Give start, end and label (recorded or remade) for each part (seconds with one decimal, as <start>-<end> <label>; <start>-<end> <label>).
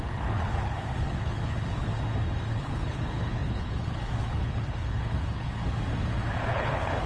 0.0-1.9 remade; 1.9-2.5 recorded; 2.5-5.6 remade; 5.6-6.5 recorded; 6.5-7.1 remade